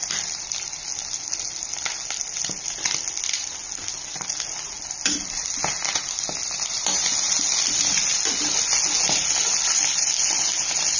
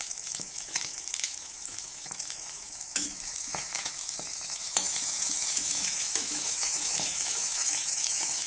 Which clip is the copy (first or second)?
second